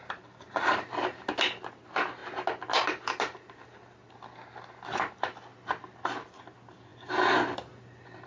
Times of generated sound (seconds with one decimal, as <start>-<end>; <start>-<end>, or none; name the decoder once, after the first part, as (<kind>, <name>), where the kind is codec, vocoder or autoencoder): none